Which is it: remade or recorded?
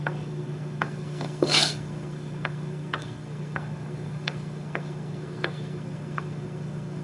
remade